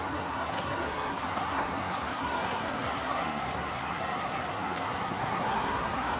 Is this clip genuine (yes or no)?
no